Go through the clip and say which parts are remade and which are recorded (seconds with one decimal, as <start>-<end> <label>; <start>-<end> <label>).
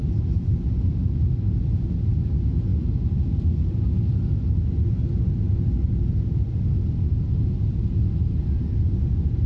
0.0-9.5 recorded